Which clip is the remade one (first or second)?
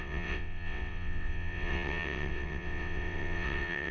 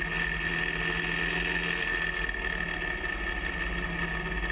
first